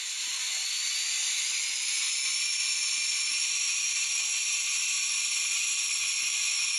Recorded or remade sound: recorded